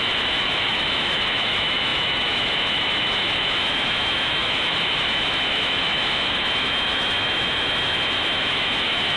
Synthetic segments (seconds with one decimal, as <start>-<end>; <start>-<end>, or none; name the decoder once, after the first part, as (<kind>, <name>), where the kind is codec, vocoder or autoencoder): 0.0-9.2 (autoencoder, DAC-VAE)